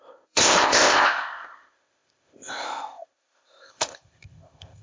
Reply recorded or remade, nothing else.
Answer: remade